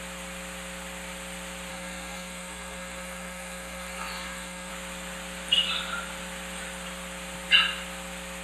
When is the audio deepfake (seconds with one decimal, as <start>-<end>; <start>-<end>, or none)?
1.7-4.7